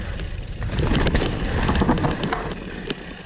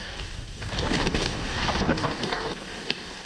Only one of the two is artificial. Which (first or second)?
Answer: second